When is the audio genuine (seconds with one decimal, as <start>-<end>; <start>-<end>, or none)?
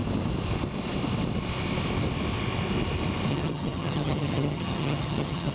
0.0-3.3